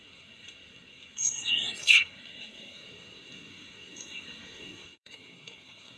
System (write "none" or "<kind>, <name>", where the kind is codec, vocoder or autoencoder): codec, SNAC